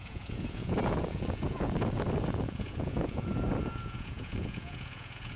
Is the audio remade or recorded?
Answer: remade